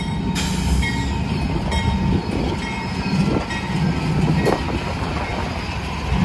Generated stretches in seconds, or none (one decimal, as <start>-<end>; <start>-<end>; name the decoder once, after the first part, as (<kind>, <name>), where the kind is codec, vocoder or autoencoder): none